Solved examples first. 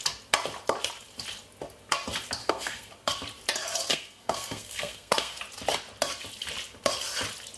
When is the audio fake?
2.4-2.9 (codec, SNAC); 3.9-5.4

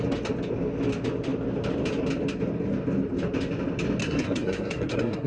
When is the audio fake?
4.0-5.3 (codec, SNAC)

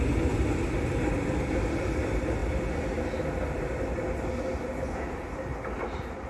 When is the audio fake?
none

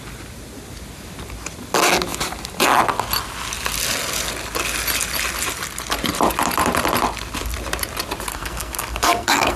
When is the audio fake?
8.3-9.6 (codec, SNAC)

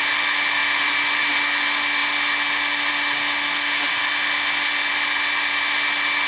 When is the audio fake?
none

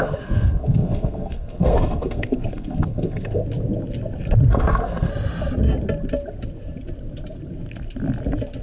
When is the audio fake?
0.0-3.4 (codec, SNAC); 4.5-5.1

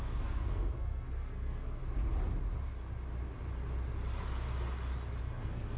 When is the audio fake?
0.0-1.8 (codec, SNAC); 5.2-5.8